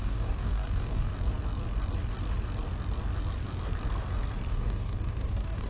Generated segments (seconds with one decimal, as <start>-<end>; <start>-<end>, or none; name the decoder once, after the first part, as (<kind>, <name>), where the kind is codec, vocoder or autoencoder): 0.0-1.1 (codec, DAC); 4.5-5.7